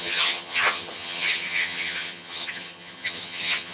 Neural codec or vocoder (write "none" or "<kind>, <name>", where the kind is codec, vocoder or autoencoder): vocoder, HiFi-GAN